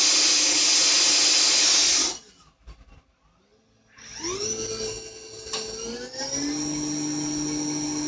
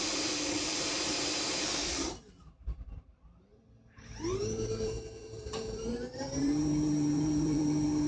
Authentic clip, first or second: first